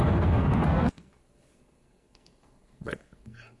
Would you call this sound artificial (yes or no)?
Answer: yes